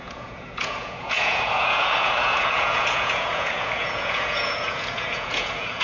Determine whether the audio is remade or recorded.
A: remade